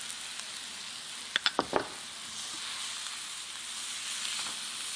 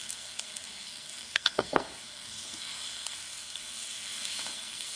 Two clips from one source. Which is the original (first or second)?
first